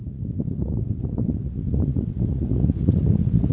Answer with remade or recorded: remade